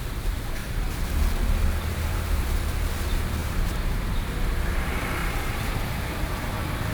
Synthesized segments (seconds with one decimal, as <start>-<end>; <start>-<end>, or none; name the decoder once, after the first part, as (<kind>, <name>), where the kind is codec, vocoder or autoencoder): 0.6-1.2 (vocoder, BigVGAN v2); 1.9-2.6; 3.4-4.6; 5.2-6.5

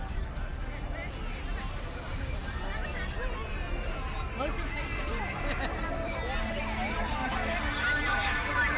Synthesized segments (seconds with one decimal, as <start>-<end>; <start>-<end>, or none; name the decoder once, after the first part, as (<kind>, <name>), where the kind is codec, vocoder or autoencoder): none

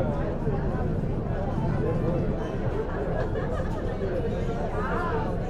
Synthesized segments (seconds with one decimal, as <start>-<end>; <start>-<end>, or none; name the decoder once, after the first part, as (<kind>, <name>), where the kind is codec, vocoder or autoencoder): 0.9-4.2 (vocoder, BigVGAN v2)

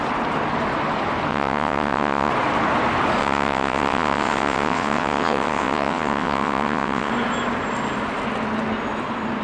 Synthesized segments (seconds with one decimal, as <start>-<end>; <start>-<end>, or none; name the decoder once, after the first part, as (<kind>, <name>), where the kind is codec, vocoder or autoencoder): 1.3-2.3 (vocoder, WaveNeXt); 3.2-7.1

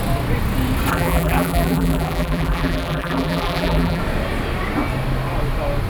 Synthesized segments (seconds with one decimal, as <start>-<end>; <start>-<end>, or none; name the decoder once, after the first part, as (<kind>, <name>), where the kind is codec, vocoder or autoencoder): 0.9-4.0 (vocoder, BigVGAN v2)